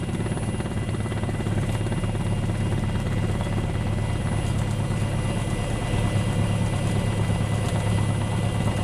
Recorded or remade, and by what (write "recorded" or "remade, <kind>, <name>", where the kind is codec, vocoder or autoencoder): recorded